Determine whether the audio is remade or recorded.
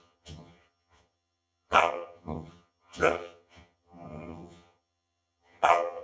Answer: remade